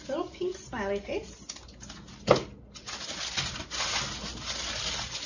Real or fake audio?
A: real